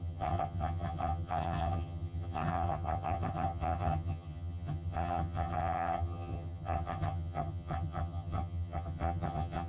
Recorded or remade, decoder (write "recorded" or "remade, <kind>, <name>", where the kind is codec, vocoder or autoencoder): remade, vocoder, HiFi-GAN